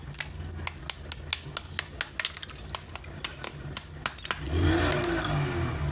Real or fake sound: real